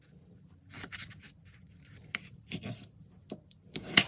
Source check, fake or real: fake